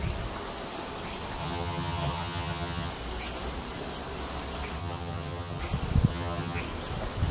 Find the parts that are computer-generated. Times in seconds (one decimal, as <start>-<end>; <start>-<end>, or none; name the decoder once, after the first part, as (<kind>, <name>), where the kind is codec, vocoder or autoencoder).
1.4-2.9 (vocoder, HiFi-GAN); 4.8-5.6; 6.1-6.6